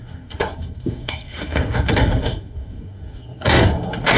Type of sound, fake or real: fake